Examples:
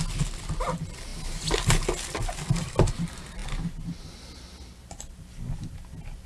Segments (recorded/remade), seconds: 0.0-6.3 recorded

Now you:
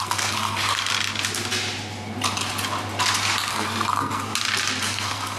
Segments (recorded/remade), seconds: 0.0-0.9 remade; 0.9-3.5 recorded; 3.5-4.3 remade; 4.3-4.8 recorded; 4.8-5.4 remade

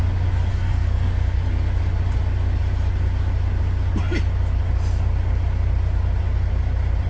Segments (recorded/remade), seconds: 0.0-0.5 recorded; 0.5-1.4 remade; 1.4-7.1 recorded

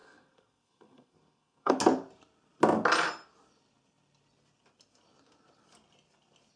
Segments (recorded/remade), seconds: 0.0-1.7 remade; 1.7-6.6 recorded

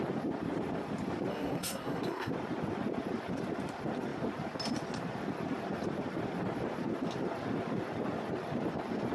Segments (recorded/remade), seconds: 0.0-1.3 recorded; 1.3-2.3 remade; 2.3-9.1 recorded

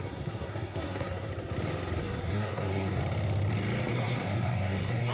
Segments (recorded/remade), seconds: 0.0-1.3 remade; 1.3-2.0 recorded; 2.0-3.0 remade; 3.0-3.9 recorded; 3.9-5.1 remade

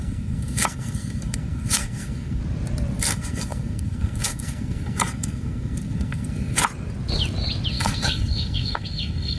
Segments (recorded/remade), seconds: 0.0-2.4 remade; 2.4-3.0 recorded; 3.0-6.6 remade; 6.6-7.7 recorded; 7.7-9.4 remade

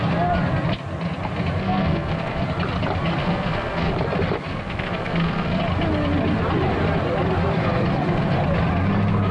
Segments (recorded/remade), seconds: 0.0-1.6 recorded; 1.6-2.4 remade; 2.4-3.2 recorded; 3.2-3.9 remade; 3.9-4.5 recorded; 4.5-5.6 remade; 5.6-9.3 recorded